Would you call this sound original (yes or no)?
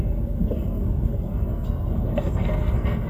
no